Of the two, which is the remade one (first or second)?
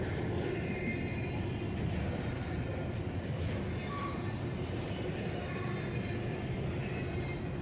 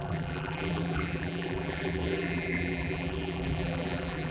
second